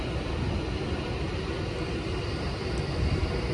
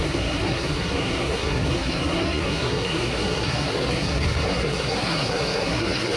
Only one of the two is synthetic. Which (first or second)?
second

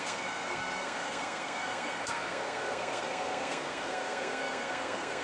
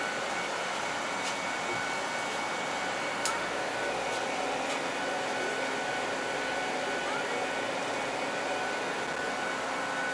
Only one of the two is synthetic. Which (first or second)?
first